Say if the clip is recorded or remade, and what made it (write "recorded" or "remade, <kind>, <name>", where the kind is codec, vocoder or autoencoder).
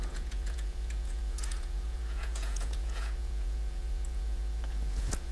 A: remade, vocoder, Vocos